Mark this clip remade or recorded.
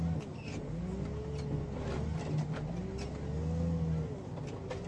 recorded